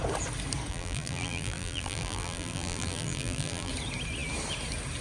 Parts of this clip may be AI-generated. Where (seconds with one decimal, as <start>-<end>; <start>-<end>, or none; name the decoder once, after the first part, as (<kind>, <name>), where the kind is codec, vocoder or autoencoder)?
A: 0.7-3.7 (vocoder, BigVGAN v2)